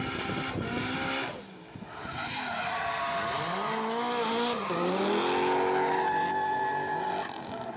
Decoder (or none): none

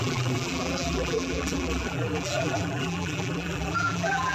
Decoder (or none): vocoder, BigVGAN v2